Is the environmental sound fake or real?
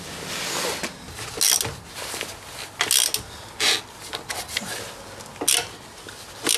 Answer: real